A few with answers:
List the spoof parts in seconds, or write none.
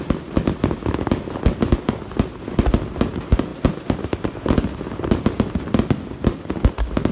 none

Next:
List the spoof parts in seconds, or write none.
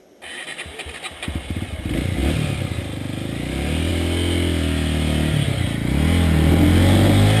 none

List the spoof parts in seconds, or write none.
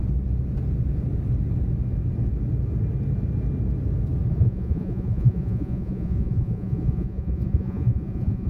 4.3-8.5 (vocoder, Vocos)